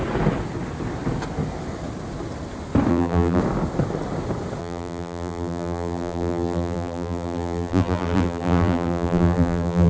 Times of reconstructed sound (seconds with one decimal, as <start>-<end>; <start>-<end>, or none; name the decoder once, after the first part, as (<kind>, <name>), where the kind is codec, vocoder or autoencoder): 2.9-3.4 (vocoder, BigVGAN v2); 4.6-9.9